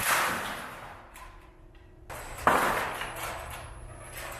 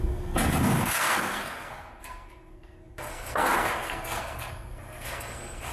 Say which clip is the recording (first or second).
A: first